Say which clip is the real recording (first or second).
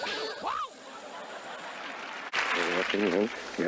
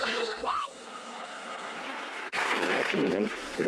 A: first